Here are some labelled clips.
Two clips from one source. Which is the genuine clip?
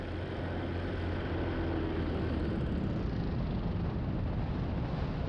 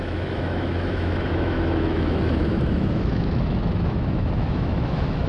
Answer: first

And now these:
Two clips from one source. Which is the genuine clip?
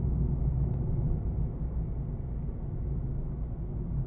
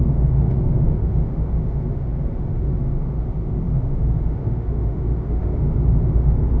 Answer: first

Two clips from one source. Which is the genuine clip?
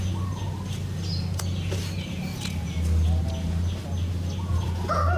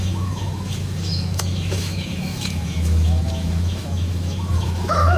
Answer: first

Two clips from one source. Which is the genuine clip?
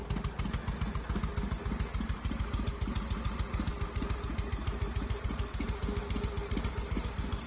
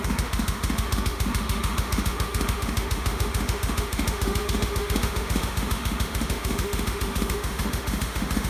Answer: first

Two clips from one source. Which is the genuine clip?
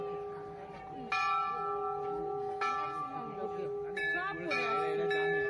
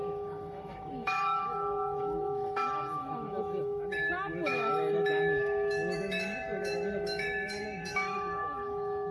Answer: first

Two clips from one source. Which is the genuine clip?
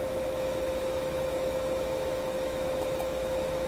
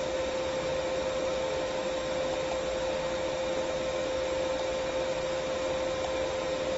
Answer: second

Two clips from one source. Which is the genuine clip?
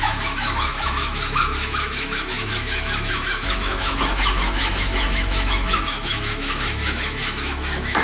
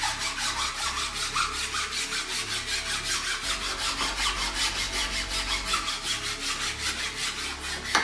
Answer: second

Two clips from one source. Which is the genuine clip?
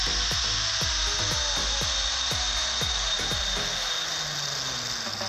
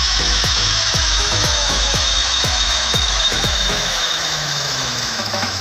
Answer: first